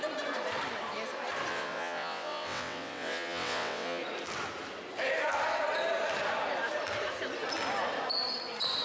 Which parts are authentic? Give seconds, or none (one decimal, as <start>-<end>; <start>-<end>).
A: 0.0-1.5; 4.0-8.8